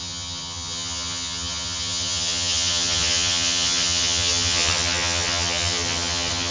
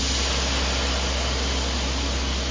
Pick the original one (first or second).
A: second